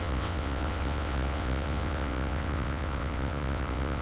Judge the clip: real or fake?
fake